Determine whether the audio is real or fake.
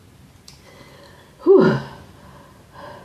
real